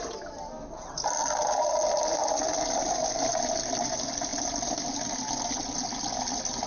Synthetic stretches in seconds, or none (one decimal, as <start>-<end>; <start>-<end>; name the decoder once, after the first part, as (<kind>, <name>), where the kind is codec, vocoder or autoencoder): 2.2-3.3 (vocoder, BigVGAN v2)